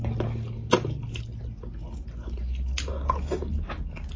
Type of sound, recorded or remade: recorded